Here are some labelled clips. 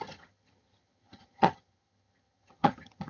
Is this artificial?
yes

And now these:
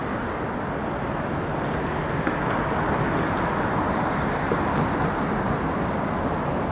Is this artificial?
no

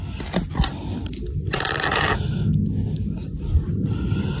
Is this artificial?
no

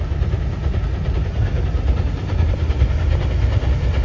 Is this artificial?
no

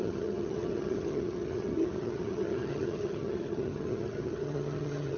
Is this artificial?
yes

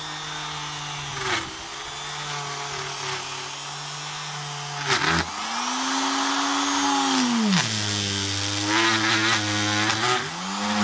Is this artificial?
no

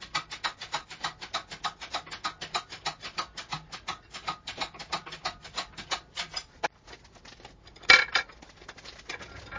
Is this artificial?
no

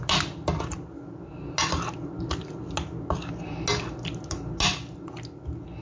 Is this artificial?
no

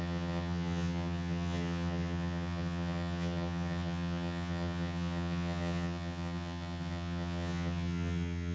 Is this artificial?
yes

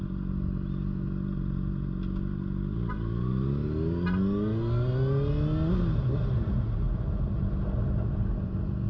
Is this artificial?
no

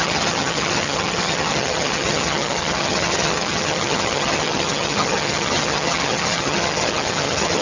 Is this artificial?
yes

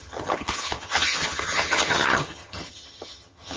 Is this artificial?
yes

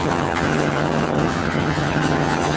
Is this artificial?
yes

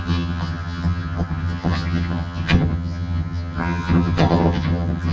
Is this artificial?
yes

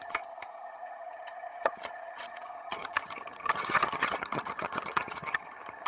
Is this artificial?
yes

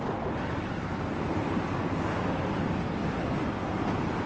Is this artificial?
no